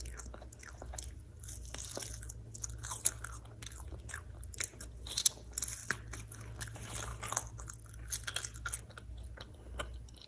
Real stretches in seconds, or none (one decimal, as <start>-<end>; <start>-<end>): 0.0-10.3